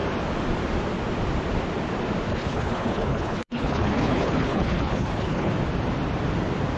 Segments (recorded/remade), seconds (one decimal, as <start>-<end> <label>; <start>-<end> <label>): 0.0-2.3 recorded; 2.3-5.5 remade; 5.5-6.8 recorded